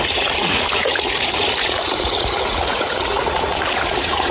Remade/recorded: remade